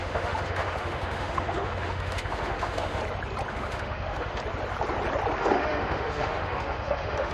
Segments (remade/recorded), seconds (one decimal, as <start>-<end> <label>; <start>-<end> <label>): 0.0-3.0 remade; 3.0-3.5 recorded; 3.5-4.4 remade; 4.4-5.4 recorded; 5.4-7.3 remade